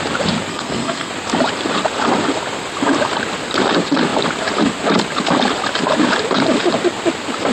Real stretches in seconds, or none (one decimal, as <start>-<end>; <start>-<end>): 0.0-0.5; 1.1-7.5